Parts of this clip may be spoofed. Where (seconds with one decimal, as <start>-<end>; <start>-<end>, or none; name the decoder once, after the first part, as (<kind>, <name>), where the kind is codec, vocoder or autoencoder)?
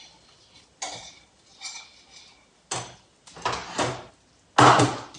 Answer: none